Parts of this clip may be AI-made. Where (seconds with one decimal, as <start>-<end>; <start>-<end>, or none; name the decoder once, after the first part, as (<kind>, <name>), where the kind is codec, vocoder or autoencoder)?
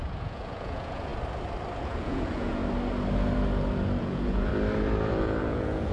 0.0-1.1 (vocoder, Vocos); 1.8-2.6; 4.0-4.5; 5.1-5.9